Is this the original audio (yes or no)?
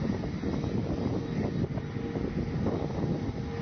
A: yes